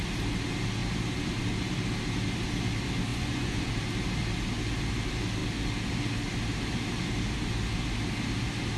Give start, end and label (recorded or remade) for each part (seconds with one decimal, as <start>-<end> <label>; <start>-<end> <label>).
0.0-3.1 recorded; 3.1-3.7 remade; 3.7-8.8 recorded